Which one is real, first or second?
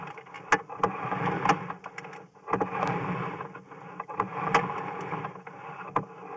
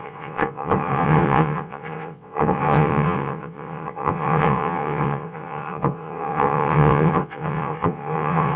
first